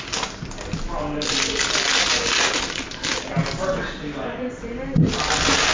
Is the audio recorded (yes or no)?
yes